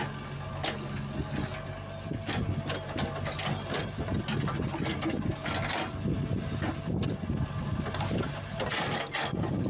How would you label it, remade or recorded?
recorded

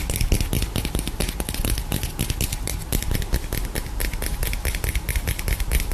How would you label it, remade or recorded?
recorded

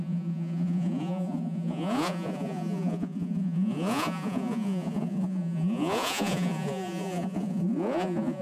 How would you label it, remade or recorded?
remade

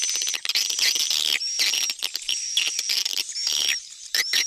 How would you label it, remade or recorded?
recorded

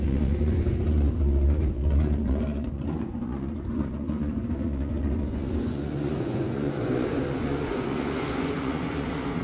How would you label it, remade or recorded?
remade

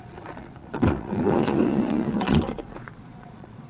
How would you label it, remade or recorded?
remade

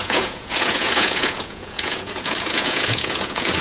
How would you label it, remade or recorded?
remade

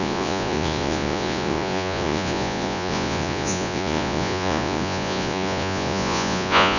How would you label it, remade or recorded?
remade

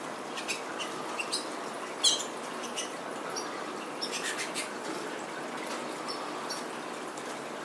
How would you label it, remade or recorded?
recorded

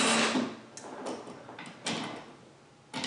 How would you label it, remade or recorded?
recorded